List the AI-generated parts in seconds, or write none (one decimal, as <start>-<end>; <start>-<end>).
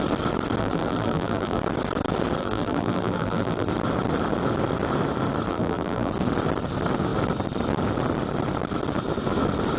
0.6-1.6; 2.4-3.7; 5.5-6.1